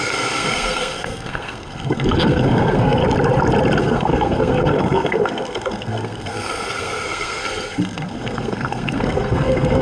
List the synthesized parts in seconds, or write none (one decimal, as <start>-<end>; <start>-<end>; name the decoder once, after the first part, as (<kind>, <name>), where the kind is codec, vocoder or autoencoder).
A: 0.0-3.0 (codec, SNAC); 3.8-9.8